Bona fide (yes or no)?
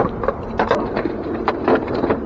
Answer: no